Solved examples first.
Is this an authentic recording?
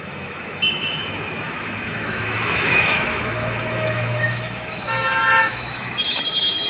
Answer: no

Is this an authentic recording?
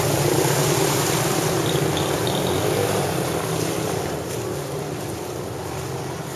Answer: yes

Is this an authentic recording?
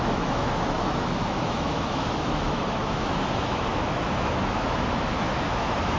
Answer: no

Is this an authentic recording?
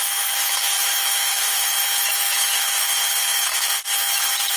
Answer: no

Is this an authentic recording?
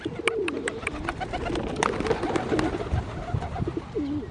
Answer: yes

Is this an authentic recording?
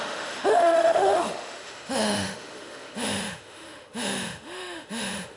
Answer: no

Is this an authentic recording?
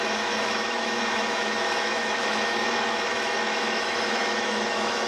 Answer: no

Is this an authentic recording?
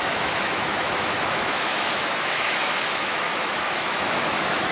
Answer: no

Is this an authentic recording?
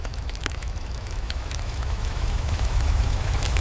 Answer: no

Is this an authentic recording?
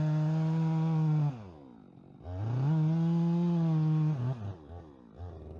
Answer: yes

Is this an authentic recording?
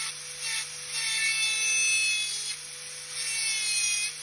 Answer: yes